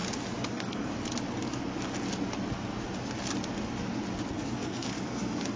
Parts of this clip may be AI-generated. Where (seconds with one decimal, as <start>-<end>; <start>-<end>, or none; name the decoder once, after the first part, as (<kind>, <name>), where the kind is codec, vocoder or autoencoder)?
0.5-0.9 (codec, SNAC); 4.3-5.6